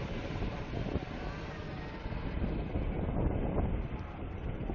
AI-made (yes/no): no